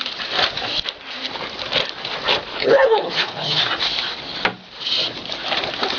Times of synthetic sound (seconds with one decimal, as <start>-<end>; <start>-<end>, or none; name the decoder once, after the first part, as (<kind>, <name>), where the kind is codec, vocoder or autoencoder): 2.5-3.6 (codec, HILCodec)